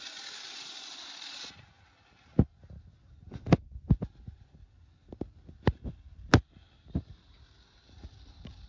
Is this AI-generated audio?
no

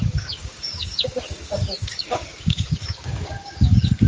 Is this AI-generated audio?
yes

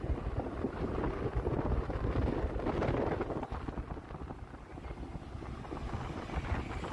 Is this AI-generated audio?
no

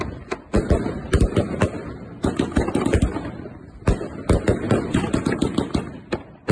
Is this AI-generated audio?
no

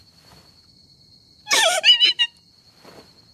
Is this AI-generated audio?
no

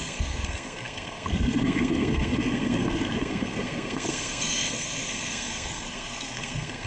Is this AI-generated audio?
yes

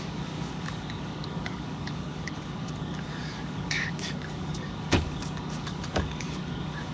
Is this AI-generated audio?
yes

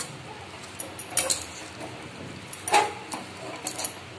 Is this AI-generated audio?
no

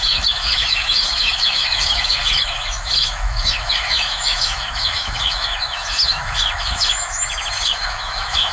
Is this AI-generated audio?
yes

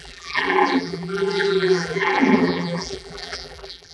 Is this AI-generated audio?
yes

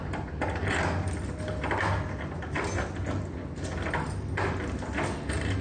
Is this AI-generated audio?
no